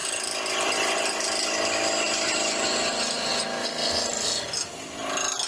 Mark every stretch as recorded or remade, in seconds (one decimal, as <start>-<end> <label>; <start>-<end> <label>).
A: 0.0-3.3 remade; 3.3-5.5 recorded